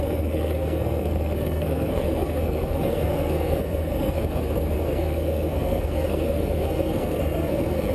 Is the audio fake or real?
fake